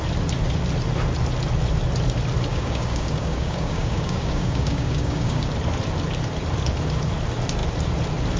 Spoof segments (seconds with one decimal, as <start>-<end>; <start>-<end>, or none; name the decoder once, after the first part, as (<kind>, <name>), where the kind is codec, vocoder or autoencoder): 2.5-5.5 (codec, DAC)